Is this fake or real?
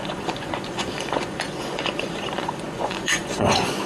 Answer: fake